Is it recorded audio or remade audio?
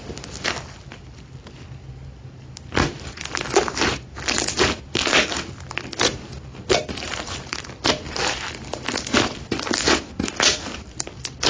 recorded